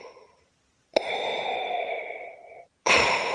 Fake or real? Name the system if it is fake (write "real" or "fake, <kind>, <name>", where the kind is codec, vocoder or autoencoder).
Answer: fake, vocoder, BigVGAN v2